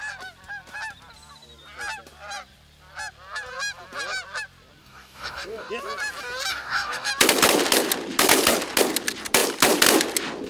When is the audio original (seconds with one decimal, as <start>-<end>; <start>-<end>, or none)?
0.0-4.8; 5.7-6.5; 7.1-10.5

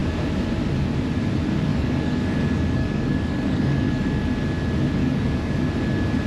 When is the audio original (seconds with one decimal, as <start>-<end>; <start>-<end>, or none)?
0.0-1.7; 4.1-5.0; 5.6-6.3

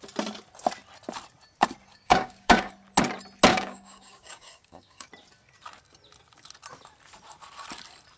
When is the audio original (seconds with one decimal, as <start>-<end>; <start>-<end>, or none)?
0.0-1.9; 2.7-3.5; 5.1-8.2

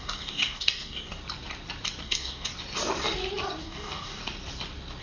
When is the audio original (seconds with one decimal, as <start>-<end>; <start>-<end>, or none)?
1.2-2.0; 2.5-3.6; 4.2-5.0